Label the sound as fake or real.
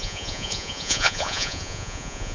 fake